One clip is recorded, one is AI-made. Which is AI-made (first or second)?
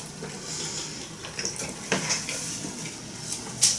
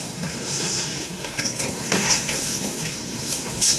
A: second